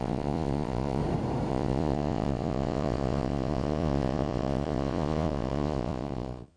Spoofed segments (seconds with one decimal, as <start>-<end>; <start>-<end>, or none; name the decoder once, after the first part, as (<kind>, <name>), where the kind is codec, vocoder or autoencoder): 0.0-1.0 (vocoder, Vocos); 1.5-6.6